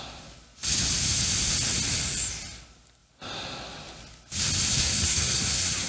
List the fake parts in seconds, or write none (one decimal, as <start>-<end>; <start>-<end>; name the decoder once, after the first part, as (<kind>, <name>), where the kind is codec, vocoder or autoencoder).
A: 4.7-5.9 (codec, SNAC)